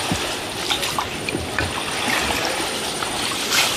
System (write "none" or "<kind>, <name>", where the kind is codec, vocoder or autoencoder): none